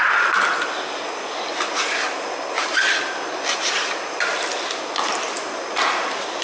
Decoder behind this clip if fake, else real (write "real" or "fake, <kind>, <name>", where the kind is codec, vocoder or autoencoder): real